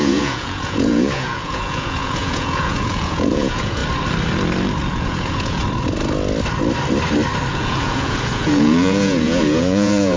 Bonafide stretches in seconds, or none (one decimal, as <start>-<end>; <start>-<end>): 3.8-4.9; 5.6-7.5